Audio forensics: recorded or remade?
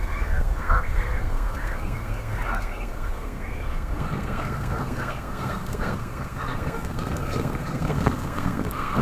remade